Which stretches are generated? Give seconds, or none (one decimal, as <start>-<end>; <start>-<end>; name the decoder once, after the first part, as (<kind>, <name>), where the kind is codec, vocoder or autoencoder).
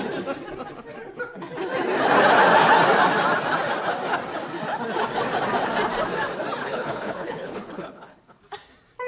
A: 6.6-8.4 (codec, HILCodec)